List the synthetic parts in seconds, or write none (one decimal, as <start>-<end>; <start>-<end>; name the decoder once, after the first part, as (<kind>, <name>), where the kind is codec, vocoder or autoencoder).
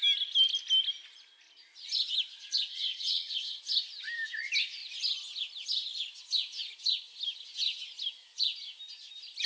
2.7-3.6 (vocoder, WaveNeXt)